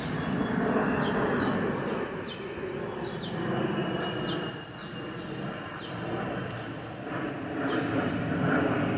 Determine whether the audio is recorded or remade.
recorded